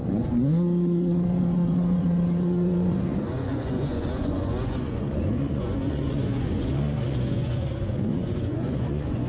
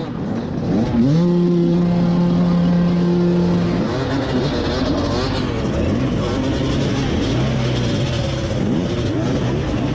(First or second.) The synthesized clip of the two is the first